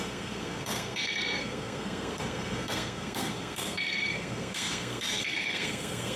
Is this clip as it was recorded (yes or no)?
no